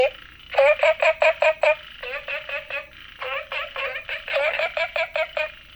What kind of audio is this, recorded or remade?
recorded